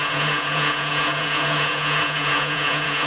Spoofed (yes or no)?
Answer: yes